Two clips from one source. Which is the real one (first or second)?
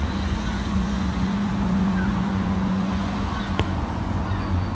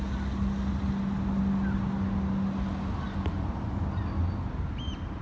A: second